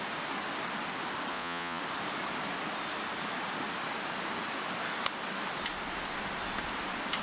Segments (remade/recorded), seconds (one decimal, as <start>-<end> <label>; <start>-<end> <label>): 0.0-1.3 recorded; 1.3-1.8 remade; 1.8-7.2 recorded